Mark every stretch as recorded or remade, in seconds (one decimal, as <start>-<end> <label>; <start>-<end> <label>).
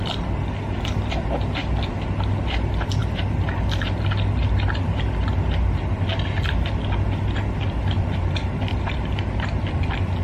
0.0-10.2 recorded